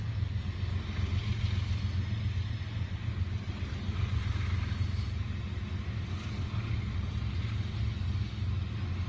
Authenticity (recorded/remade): recorded